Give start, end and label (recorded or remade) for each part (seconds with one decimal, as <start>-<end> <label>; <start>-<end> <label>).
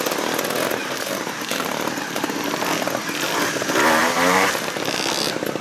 0.0-0.8 recorded; 0.8-2.4 remade; 2.4-4.0 recorded; 4.0-4.6 remade; 4.6-5.6 recorded